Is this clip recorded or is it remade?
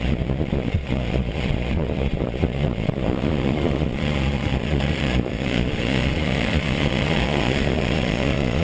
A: remade